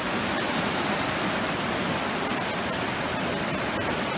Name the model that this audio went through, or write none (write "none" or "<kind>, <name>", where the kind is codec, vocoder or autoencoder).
none